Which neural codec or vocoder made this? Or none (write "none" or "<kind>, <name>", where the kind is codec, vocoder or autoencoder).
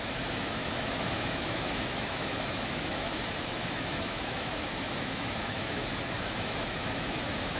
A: autoencoder, DAC-VAE